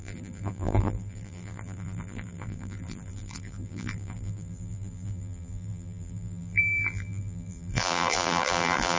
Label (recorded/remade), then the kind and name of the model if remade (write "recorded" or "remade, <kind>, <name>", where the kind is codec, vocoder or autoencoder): remade, vocoder, BigVGAN v2